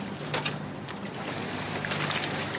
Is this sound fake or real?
real